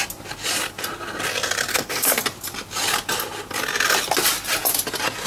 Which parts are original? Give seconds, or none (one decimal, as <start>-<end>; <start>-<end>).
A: 0.0-1.7; 2.2-5.3